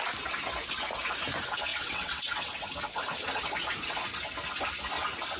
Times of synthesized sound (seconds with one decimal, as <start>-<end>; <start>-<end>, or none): 1.7-2.6